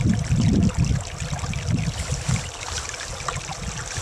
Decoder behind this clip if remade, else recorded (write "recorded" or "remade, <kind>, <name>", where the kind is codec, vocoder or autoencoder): recorded